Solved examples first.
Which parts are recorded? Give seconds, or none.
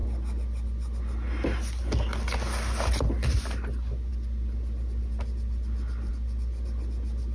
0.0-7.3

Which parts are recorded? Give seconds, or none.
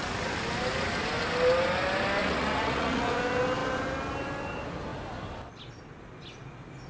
0.0-2.2; 3.1-6.9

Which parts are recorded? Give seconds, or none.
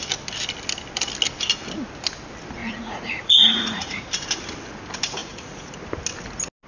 0.0-2.6; 4.1-5.2; 5.7-6.7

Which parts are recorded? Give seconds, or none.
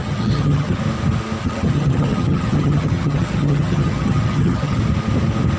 0.8-1.4; 4.8-5.6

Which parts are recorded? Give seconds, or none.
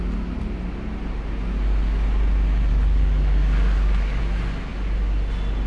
0.0-2.7; 4.2-5.7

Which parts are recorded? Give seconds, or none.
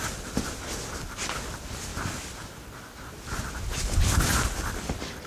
0.0-5.3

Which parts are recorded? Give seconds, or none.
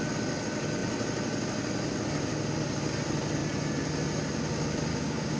0.0-4.9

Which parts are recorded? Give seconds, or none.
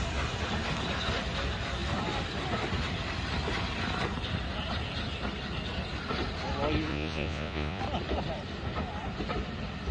0.0-6.9; 7.8-9.9